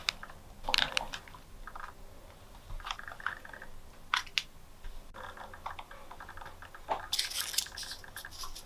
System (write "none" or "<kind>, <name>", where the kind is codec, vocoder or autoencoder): none